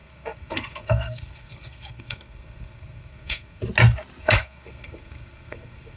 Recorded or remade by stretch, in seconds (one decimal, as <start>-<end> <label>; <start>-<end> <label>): 0.0-3.6 remade; 3.6-4.2 recorded; 4.2-6.0 remade